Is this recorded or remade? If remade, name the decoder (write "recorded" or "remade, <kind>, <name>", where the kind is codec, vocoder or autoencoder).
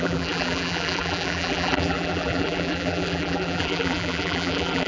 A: remade, vocoder, BigVGAN v2